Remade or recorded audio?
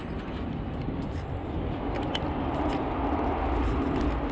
recorded